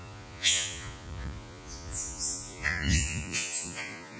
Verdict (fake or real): fake